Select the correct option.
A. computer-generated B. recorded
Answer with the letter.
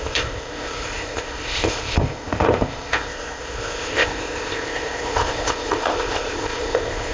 A